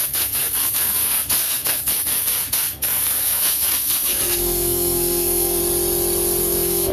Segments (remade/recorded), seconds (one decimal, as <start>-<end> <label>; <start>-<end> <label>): 0.0-5.6 remade; 5.6-6.4 recorded; 6.4-6.9 remade